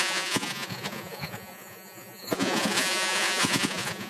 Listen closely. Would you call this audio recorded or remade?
remade